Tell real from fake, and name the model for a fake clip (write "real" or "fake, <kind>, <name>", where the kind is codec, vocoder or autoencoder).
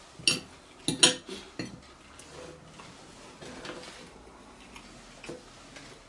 real